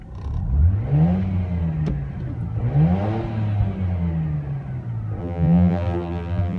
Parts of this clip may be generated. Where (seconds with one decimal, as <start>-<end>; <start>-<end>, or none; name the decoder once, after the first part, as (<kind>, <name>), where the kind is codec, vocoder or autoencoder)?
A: 5.2-6.6 (vocoder, BigVGAN v2)